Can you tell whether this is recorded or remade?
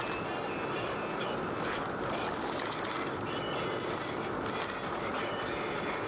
recorded